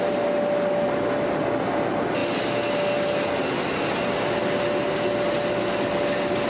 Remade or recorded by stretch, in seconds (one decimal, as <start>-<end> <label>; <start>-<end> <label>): 0.0-6.5 recorded